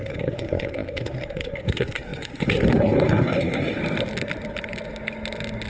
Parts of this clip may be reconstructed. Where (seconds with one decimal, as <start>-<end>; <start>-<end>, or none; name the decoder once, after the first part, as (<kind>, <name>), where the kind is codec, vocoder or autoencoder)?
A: 0.0-3.8 (codec, SNAC)